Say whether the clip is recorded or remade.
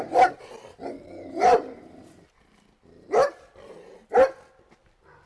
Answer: recorded